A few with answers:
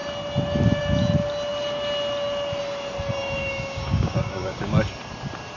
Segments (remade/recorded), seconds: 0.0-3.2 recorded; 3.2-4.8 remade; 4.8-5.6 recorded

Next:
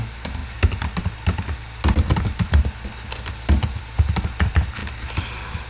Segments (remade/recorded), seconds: 0.0-5.7 recorded

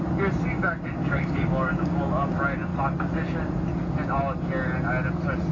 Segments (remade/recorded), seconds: 0.0-1.0 recorded; 1.0-2.0 remade; 2.0-5.5 recorded

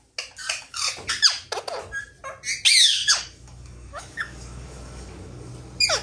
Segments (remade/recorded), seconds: 0.0-0.4 recorded; 0.4-0.9 remade; 0.9-2.8 recorded; 2.8-5.5 remade; 5.5-6.0 recorded

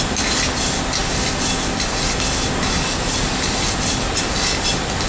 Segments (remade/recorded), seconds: 0.0-5.1 recorded